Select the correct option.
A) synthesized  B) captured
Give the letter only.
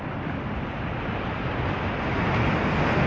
B